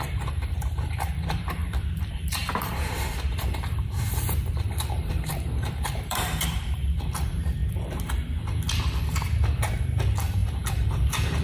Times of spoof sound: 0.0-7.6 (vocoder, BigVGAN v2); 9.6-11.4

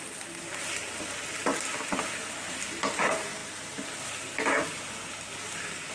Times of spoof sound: 3.4-5.1 (vocoder, BigVGAN v2)

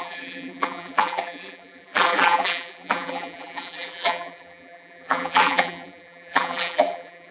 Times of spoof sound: 0.0-7.3 (vocoder, BigVGAN v2)

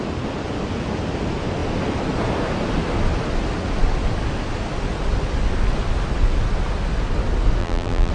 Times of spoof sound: 7.6-8.1 (vocoder, BigVGAN v2)

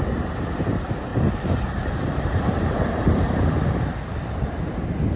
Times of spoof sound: 1.1-3.5 (vocoder, BigVGAN v2)

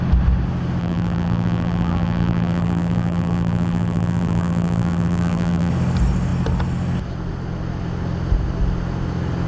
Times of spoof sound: 0.8-5.7 (vocoder, BigVGAN v2)

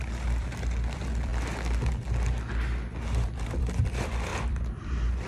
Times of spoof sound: 0.0-1.3 (vocoder, BigVGAN v2); 3.4-5.3

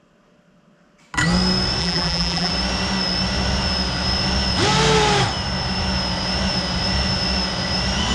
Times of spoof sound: 1.8-2.5 (vocoder, BigVGAN v2)